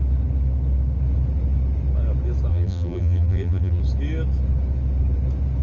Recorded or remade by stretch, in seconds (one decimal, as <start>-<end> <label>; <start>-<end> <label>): 0.0-2.5 recorded; 2.5-3.8 remade; 3.8-5.6 recorded